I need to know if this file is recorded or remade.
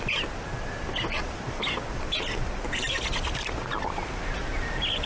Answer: recorded